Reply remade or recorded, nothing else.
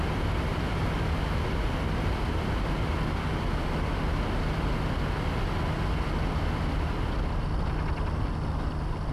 recorded